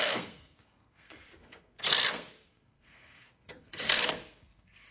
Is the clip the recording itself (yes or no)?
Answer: no